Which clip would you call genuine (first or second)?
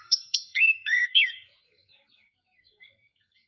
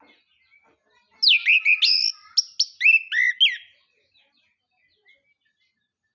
second